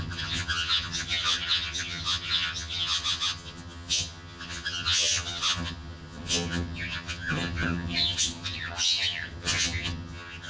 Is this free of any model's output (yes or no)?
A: no